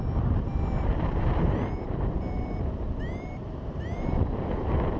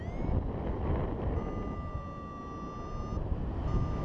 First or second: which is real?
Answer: second